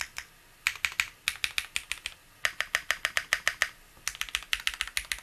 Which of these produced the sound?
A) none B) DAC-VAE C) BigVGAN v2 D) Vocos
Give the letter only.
A